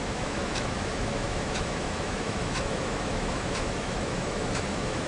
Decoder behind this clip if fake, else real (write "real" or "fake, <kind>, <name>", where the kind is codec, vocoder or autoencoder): fake, autoencoder, DAC-VAE